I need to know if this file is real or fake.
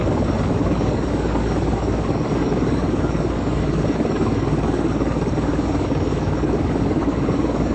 fake